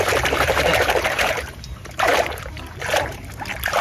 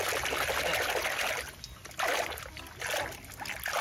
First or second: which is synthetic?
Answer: first